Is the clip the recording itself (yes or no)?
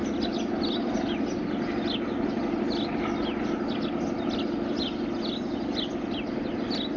yes